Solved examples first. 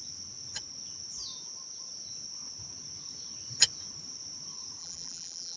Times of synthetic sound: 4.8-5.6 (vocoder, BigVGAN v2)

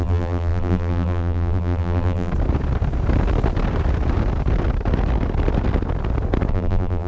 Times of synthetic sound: 0.0-2.3 (vocoder, BigVGAN v2); 6.5-7.1

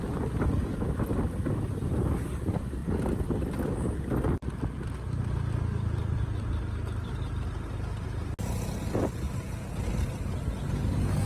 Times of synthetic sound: none

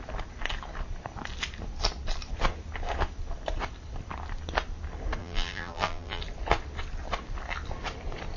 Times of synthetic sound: 5.2-6.2 (vocoder, BigVGAN v2)